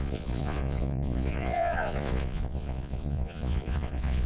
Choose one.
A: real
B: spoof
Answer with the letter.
B